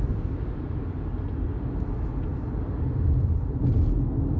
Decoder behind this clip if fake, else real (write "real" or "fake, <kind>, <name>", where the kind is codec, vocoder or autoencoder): real